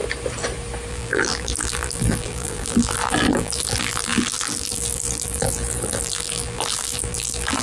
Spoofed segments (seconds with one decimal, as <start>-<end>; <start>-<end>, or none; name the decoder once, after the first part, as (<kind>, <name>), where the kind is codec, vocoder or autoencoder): 0.9-7.6 (vocoder, BigVGAN v2)